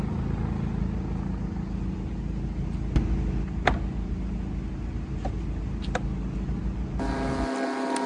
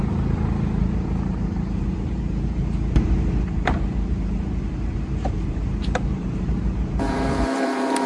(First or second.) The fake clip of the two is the second